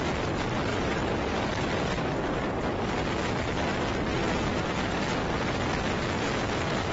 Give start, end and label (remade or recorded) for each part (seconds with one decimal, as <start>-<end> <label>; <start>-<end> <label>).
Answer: 0.0-0.7 recorded; 0.7-3.3 remade; 3.3-4.2 recorded; 4.2-5.0 remade; 5.0-6.9 recorded